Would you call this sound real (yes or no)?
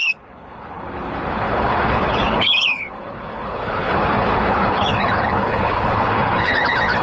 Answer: no